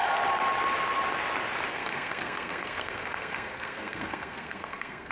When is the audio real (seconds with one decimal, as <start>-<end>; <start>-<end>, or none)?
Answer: 0.0-1.7